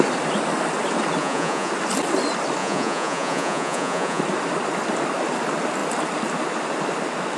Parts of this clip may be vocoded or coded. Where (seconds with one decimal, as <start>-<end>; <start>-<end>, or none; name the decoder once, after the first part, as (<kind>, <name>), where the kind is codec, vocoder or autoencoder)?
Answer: 1.2-1.7 (vocoder, Vocos); 2.6-4.2